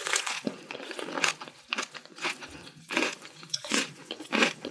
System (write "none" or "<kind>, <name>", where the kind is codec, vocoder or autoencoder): vocoder, Vocos